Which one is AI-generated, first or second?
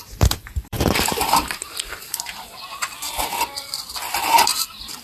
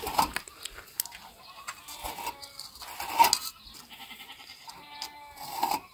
first